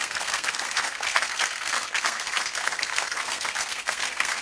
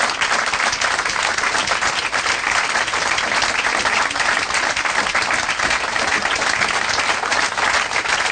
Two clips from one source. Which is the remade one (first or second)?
first